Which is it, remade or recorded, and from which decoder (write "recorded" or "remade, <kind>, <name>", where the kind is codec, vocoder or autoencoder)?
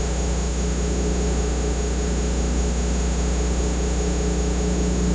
remade, autoencoder, DAC-VAE